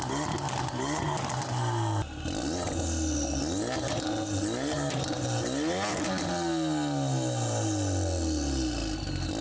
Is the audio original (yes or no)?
yes